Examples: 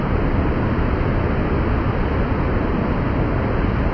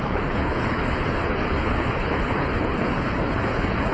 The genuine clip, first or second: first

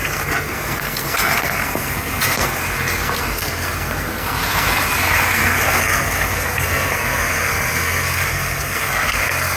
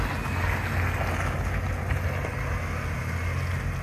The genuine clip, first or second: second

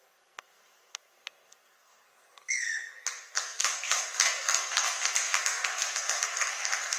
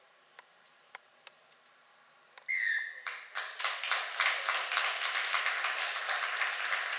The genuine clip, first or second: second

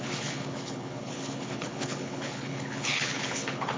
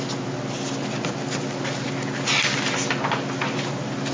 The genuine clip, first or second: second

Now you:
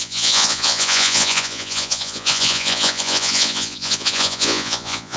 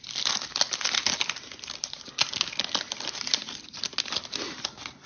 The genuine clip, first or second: second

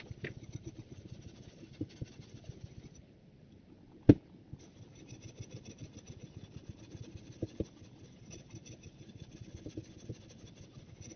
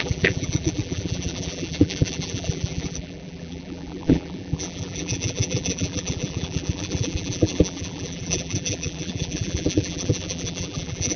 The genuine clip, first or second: first